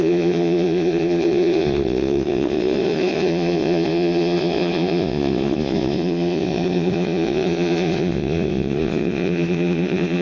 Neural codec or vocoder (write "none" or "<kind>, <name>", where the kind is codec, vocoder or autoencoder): vocoder, Vocos